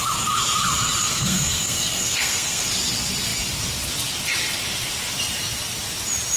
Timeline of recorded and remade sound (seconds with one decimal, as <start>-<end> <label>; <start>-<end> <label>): 0.0-1.0 recorded; 1.0-2.6 remade; 2.6-6.4 recorded